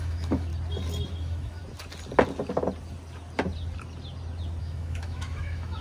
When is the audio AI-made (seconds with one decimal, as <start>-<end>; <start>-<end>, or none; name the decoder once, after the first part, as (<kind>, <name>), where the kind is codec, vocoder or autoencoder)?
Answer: 0.0-0.5 (autoencoder, DAC-VAE); 1.1-1.6; 4.6-5.8